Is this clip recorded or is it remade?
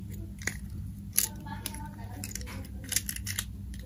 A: recorded